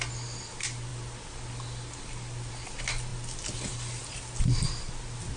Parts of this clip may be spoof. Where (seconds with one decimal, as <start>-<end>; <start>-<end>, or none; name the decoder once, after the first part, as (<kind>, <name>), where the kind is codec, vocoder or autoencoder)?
none